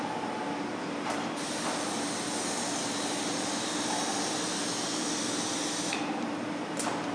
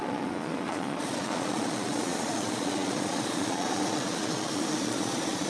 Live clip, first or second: first